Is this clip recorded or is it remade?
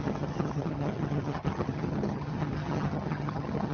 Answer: remade